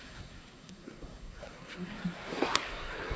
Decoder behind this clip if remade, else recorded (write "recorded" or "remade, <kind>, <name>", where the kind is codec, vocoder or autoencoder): remade, codec, SNAC